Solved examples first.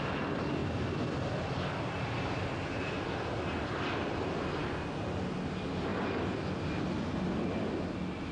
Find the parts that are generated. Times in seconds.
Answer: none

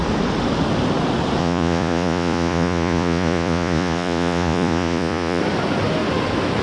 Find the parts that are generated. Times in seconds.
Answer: 1.4-5.4 (vocoder, Vocos)

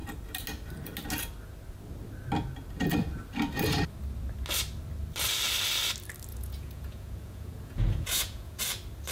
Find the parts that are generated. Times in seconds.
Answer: 6.3-8.6 (vocoder, Vocos)

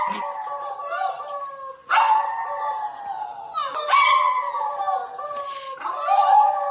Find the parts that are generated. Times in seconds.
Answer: none

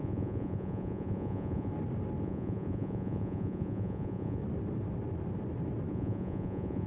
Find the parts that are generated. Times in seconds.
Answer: 0.0-1.7 (vocoder, Vocos); 2.2-4.4; 5.9-6.9

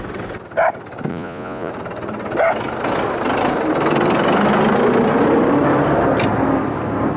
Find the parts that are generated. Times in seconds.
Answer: 1.1-1.7 (vocoder, Vocos)

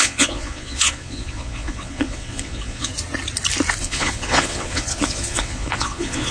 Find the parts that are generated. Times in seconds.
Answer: 0.0-2.9 (vocoder, Vocos); 3.8-6.3